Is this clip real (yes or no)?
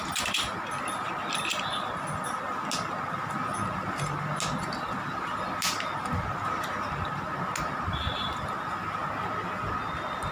yes